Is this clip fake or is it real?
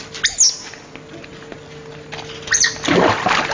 real